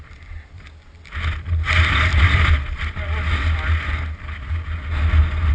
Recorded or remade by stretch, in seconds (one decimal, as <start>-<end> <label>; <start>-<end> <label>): 0.0-5.5 recorded